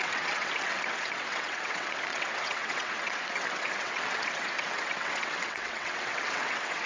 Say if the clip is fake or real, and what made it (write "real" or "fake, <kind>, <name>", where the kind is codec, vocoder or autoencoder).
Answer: fake, vocoder, WaveNeXt